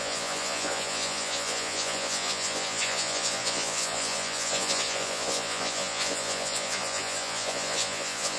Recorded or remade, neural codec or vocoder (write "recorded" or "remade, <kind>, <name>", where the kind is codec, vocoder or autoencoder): remade, vocoder, Vocos